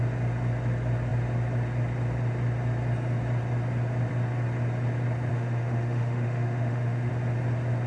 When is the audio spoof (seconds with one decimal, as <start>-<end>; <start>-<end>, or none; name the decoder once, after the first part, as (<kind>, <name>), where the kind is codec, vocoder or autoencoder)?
5.3-7.1 (autoencoder, DAC-VAE)